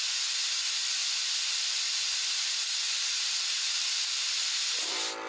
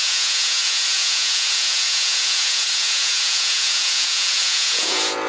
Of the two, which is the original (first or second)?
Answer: first